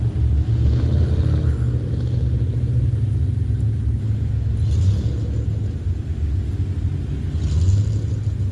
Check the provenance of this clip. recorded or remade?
recorded